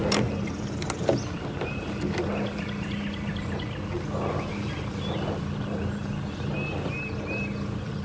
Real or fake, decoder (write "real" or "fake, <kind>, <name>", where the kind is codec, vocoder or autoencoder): real